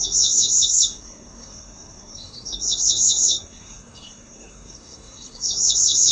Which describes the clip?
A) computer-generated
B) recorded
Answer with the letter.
A